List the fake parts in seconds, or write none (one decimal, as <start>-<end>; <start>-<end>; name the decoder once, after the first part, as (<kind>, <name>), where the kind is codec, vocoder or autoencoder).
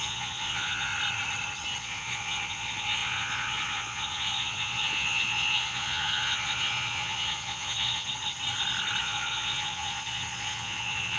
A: 0.0-0.9 (vocoder, Vocos); 1.8-8.1; 9.0-11.2